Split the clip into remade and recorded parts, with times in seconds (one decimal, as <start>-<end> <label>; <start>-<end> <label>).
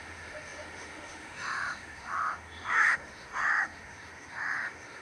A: 0.0-5.0 remade